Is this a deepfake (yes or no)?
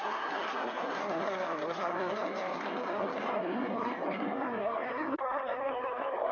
yes